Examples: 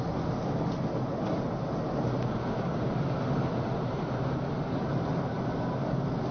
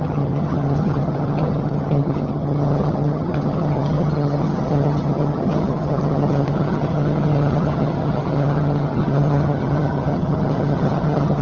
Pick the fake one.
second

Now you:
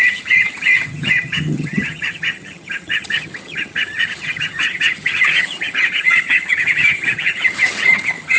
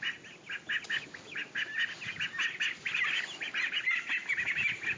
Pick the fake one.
first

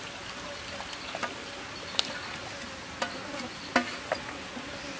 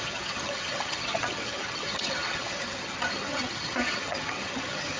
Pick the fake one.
second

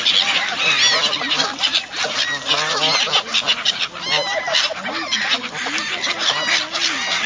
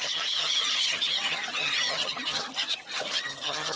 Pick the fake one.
second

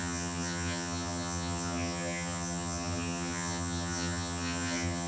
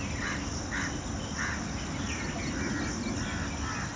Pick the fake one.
first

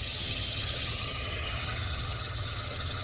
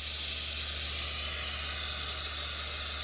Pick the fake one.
first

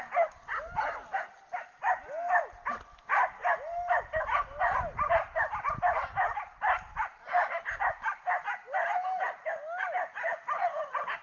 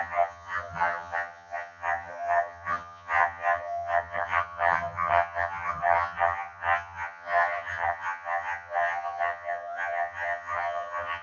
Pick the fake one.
second